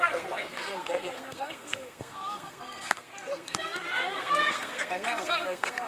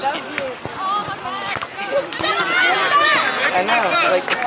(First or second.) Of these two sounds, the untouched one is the second